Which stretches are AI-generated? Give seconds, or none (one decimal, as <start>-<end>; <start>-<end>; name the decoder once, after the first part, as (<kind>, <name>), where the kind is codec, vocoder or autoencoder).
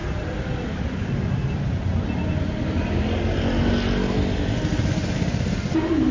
none